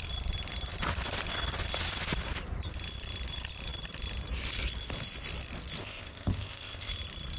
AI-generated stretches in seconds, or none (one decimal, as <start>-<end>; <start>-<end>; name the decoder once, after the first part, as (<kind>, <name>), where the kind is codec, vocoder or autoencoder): 5.8-6.9 (codec, ZipCodec)